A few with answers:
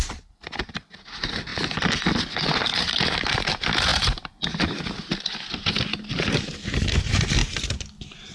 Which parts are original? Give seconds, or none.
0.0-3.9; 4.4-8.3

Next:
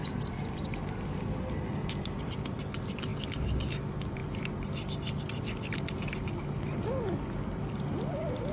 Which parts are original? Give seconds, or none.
0.0-8.5

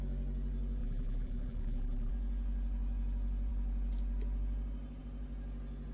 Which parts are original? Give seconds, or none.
0.0-0.8; 2.1-5.9

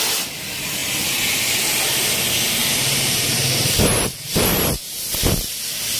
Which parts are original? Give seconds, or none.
0.0-2.6; 5.0-6.0

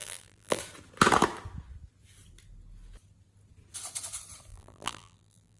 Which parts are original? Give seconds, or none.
0.6-4.5

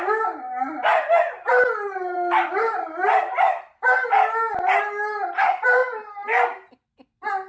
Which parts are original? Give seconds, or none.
0.0-0.9; 3.4-5.8; 6.7-7.5